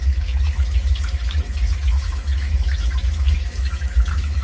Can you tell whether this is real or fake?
fake